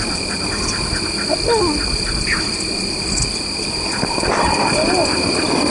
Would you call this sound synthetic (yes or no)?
no